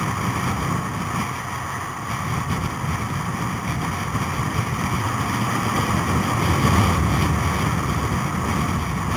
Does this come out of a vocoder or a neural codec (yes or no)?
no